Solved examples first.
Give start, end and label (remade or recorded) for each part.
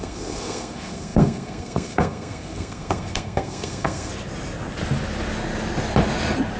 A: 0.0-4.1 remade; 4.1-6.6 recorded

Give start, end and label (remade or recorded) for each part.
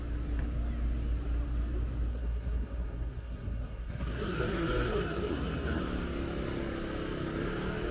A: 0.0-2.1 recorded; 2.1-5.8 remade; 5.8-7.9 recorded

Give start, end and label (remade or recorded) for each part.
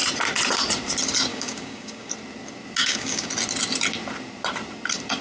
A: 0.0-1.3 recorded; 1.3-2.1 remade; 2.1-2.8 recorded; 2.8-3.3 remade; 3.3-5.2 recorded